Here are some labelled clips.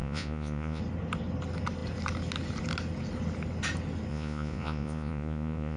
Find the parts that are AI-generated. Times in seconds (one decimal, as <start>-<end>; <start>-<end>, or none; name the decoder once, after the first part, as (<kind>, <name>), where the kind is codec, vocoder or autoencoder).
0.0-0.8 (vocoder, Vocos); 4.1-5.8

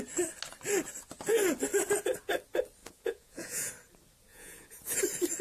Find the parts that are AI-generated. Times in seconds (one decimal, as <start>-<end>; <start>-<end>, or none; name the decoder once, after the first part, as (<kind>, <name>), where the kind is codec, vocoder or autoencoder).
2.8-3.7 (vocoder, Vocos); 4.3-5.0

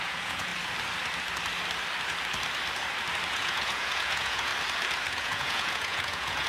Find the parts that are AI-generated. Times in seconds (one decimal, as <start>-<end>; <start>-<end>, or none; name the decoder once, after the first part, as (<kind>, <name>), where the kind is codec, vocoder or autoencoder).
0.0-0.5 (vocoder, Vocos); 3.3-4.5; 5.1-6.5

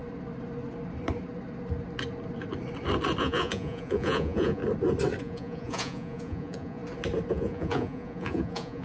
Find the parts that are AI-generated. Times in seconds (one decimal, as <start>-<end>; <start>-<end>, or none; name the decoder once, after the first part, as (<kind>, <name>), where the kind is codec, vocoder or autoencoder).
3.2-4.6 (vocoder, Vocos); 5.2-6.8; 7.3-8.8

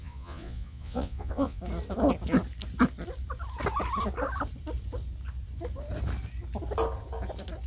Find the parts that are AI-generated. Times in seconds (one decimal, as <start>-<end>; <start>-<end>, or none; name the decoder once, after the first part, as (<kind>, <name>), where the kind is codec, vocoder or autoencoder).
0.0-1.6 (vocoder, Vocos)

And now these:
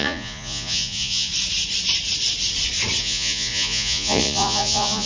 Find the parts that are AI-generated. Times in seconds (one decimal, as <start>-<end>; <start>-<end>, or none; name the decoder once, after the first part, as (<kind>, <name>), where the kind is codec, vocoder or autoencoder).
0.0-1.3 (vocoder, Vocos); 3.0-5.1

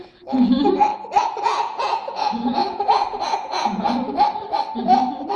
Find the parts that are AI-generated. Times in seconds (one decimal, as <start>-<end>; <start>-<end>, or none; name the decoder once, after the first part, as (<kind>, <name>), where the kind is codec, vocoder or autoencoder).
1.2-3.9 (vocoder, Vocos)